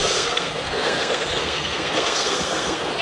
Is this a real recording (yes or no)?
no